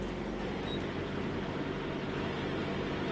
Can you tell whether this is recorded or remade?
recorded